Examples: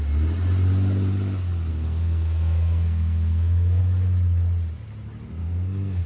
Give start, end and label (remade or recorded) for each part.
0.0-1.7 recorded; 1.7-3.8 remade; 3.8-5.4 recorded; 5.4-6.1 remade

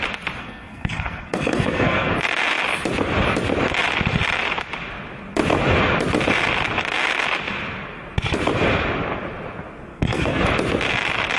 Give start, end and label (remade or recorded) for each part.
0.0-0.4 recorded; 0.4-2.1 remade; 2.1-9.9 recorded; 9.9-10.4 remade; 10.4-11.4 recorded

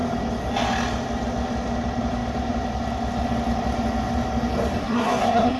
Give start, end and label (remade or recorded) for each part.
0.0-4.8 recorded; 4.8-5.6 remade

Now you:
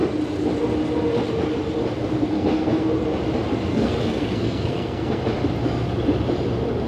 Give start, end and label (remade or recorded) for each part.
0.0-2.3 recorded; 2.3-2.9 remade; 2.9-3.7 recorded; 3.7-5.2 remade; 5.2-6.9 recorded

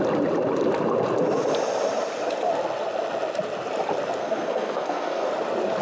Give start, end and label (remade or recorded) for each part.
0.0-4.2 recorded; 4.2-5.3 remade; 5.3-5.8 recorded

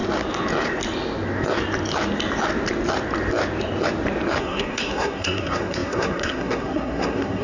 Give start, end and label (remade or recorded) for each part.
0.0-4.4 recorded; 4.4-7.4 remade